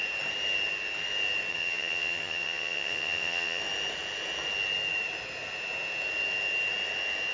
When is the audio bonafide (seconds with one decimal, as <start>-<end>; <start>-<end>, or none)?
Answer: 0.0-1.5; 3.6-7.3